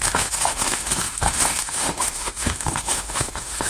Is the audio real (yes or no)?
no